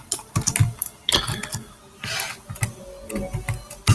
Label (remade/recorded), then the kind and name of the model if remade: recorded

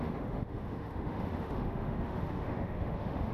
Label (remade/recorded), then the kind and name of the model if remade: remade, autoencoder, DAC-VAE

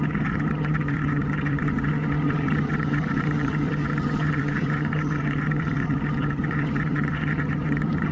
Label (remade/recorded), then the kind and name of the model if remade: remade, vocoder, HiFi-GAN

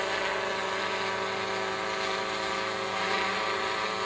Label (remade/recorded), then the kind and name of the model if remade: recorded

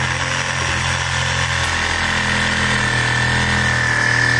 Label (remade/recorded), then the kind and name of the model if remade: recorded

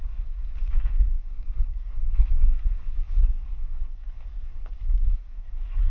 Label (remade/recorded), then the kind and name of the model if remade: remade, codec, SNAC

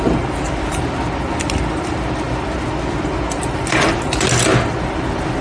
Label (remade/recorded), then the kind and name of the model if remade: recorded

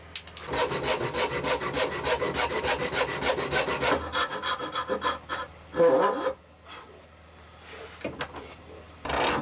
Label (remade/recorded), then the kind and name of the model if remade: recorded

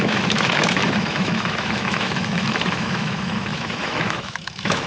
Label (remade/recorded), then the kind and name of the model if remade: remade, autoencoder, DAC-VAE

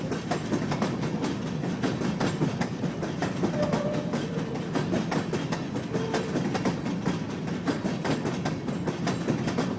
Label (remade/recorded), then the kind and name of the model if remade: recorded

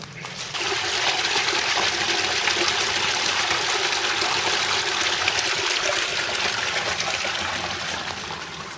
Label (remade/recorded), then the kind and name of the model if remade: recorded